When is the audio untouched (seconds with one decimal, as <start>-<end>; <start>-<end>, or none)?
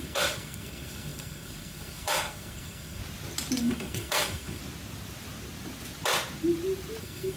3.0-3.6; 4.6-7.0